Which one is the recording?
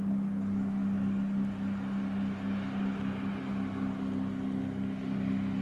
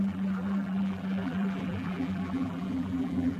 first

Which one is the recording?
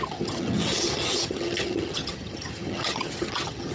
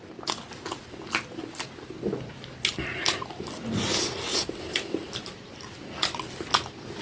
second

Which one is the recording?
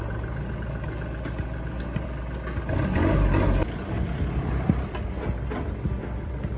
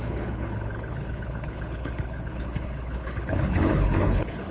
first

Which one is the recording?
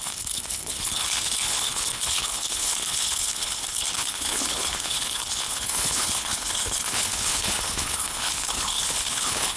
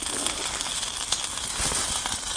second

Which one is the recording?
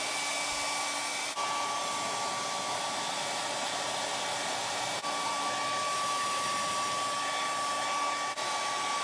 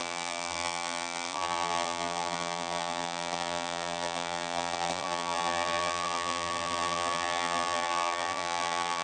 first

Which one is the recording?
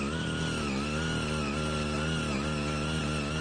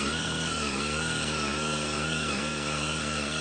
first